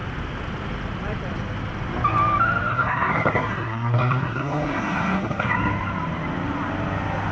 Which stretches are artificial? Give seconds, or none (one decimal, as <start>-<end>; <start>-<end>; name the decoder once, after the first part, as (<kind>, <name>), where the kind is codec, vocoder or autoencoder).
2.7-5.5 (codec, SNAC)